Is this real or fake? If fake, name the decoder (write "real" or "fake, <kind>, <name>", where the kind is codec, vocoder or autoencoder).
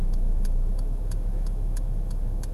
fake, autoencoder, DAC-VAE